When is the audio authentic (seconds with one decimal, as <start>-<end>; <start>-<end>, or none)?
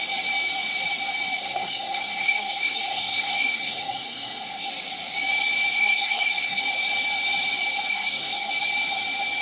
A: 0.0-1.4; 4.7-5.7; 6.6-7.9; 8.5-9.4